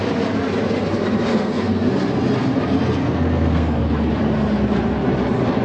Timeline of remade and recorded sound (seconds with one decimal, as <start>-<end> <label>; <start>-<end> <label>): 0.0-1.3 recorded; 1.3-1.9 remade; 1.9-3.0 recorded; 3.0-3.8 remade; 3.8-5.6 recorded